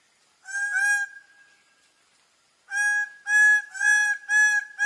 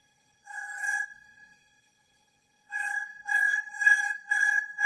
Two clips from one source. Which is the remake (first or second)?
second